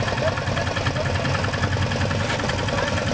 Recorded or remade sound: recorded